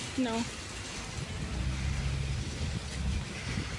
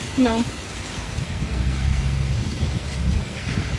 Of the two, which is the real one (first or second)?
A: first